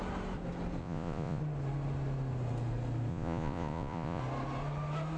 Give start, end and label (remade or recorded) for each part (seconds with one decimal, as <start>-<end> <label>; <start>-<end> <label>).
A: 0.0-0.8 recorded; 0.8-1.4 remade; 1.4-3.1 recorded; 3.1-4.2 remade; 4.2-5.2 recorded